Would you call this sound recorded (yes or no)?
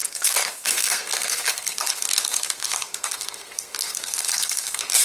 no